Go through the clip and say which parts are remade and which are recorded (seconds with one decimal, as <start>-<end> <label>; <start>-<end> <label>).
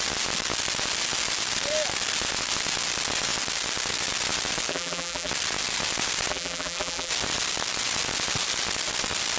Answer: 0.0-4.7 recorded; 4.7-5.3 remade; 5.3-6.3 recorded; 6.3-7.1 remade; 7.1-9.4 recorded